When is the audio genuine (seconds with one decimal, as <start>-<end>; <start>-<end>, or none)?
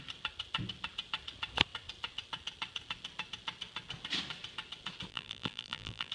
0.0-5.1